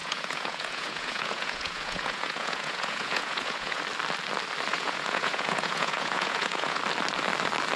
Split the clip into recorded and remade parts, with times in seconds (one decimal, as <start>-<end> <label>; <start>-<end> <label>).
0.0-3.8 remade; 3.8-4.7 recorded; 4.7-6.8 remade; 6.8-7.8 recorded